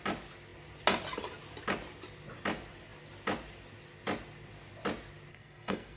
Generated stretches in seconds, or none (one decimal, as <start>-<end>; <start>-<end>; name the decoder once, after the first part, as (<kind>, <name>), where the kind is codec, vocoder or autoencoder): 5.3-6.0 (codec, SNAC)